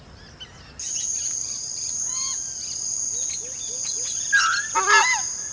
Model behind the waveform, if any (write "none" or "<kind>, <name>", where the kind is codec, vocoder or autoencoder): none